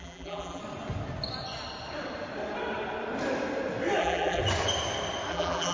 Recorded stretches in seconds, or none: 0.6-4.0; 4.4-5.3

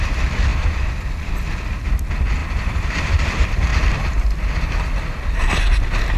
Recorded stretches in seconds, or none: 0.0-2.4; 3.3-3.7; 5.4-6.2

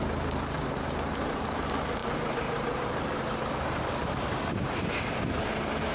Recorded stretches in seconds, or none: none

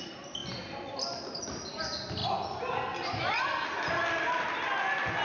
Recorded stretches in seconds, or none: 0.0-0.4; 1.8-2.2; 3.9-5.2